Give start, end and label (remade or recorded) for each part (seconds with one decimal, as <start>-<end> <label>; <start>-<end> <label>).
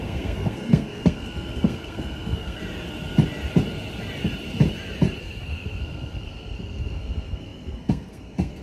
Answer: 0.0-2.6 remade; 2.6-5.2 recorded; 5.2-8.6 remade